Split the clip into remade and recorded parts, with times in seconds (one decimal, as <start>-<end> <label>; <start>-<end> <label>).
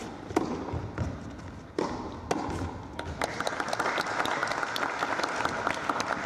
0.0-6.3 recorded